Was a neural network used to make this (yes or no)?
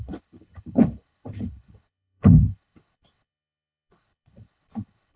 yes